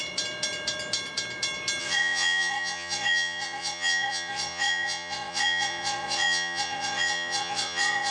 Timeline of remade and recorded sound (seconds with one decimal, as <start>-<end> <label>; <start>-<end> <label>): 0.0-1.8 recorded; 1.8-8.1 remade